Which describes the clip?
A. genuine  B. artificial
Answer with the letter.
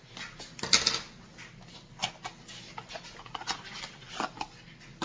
A